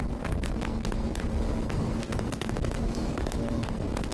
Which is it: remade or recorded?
remade